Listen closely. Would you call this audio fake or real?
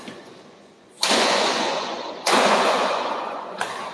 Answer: fake